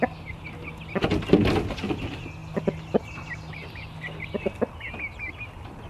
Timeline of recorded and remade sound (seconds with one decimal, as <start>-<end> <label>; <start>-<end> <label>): 0.0-5.9 recorded